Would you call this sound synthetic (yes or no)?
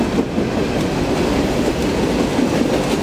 no